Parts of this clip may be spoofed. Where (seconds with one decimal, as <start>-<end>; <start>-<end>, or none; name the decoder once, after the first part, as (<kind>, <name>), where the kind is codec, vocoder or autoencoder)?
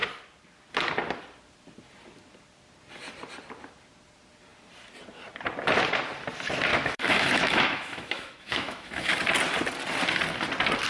6.7-9.1 (autoencoder, DAC-VAE)